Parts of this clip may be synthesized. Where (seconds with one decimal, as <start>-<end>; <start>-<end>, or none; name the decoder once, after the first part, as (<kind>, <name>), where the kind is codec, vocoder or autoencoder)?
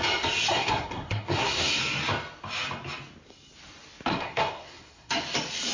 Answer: 0.5-1.8 (codec, SNAC); 4.1-5.1